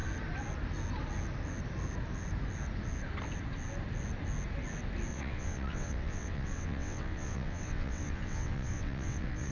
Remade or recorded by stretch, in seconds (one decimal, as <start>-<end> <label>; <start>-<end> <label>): 0.0-5.1 recorded; 5.1-9.5 remade